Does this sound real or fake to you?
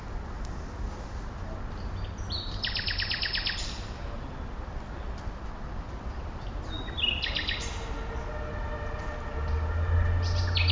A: real